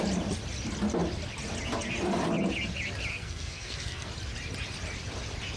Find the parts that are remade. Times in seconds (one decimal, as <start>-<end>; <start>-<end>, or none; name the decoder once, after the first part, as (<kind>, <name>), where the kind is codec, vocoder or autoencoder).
3.1-4.1 (codec, SNAC)